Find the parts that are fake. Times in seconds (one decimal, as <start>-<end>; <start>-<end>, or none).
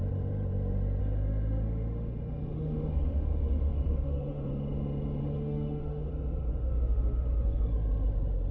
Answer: 1.0-4.5; 5.2-6.1; 6.5-7.6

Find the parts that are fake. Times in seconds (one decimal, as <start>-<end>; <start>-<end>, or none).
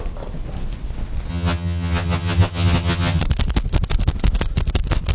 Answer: 1.3-3.2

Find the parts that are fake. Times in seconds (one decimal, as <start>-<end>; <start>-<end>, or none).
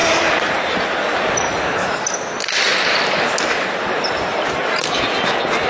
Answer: none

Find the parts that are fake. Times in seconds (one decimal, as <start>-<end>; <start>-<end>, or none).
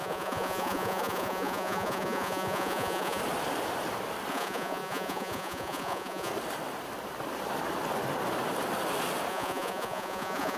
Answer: 0.0-3.2; 4.3-6.3; 9.3-10.6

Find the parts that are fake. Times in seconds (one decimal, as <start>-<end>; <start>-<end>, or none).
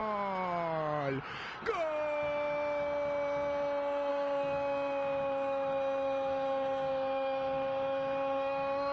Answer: 4.1-8.9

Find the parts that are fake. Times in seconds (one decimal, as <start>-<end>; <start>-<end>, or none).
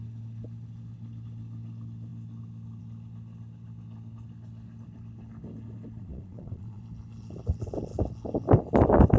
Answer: 6.0-6.8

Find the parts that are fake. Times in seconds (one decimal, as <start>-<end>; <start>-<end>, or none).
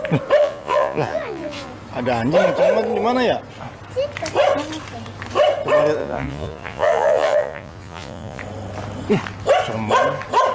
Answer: 0.4-1.7; 6.0-8.4